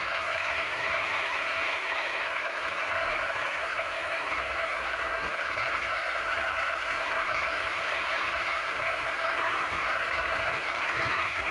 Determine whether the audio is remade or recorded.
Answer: remade